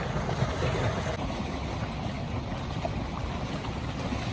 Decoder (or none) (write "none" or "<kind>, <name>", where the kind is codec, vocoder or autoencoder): none